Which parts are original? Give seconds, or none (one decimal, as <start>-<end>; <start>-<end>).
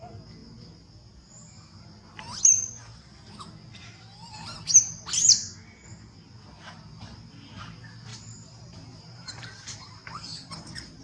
0.0-8.1